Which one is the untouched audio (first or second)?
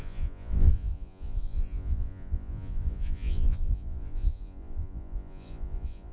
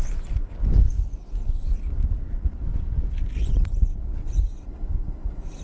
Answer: second